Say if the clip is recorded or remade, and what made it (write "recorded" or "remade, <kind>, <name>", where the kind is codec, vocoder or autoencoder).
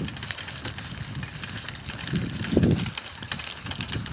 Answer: recorded